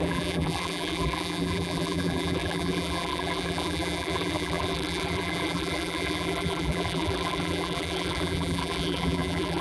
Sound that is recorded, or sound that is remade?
remade